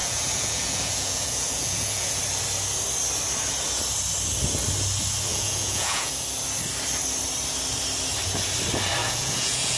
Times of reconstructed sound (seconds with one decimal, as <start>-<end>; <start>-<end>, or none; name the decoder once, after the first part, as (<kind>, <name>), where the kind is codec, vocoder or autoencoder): 0.0-2.2 (vocoder, Vocos); 5.3-6.1; 9.0-9.8